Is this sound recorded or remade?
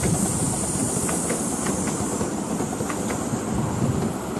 recorded